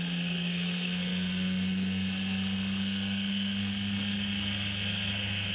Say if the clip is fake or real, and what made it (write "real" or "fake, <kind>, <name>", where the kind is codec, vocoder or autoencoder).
fake, codec, SNAC